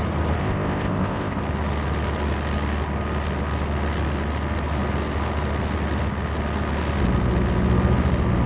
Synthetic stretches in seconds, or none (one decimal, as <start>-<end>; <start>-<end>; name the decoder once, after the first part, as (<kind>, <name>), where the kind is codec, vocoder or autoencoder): 0.4-1.4 (codec, ZipCodec)

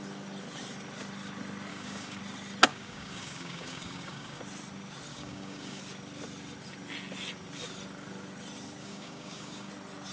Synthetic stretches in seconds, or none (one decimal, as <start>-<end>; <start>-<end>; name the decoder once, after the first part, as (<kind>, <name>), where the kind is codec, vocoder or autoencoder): 1.7-2.2 (codec, DAC); 2.7-4.4; 5.1-5.8; 8.8-9.7